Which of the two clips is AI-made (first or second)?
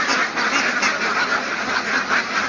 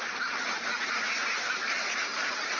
second